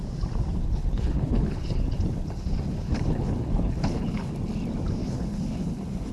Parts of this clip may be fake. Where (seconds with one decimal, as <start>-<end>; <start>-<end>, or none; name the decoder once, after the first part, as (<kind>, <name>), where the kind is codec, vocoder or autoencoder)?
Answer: 0.6-4.3 (codec, HILCodec); 5.0-6.1